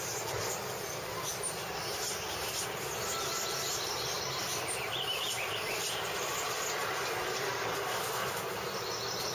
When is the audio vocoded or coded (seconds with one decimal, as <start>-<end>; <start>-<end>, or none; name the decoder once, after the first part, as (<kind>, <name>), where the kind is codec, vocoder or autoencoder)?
4.4-6.2 (vocoder, BigVGAN v2)